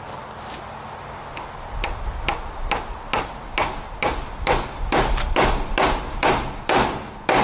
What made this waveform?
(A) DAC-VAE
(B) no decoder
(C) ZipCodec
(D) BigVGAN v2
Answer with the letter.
B